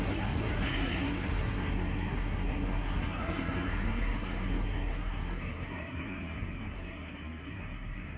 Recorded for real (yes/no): no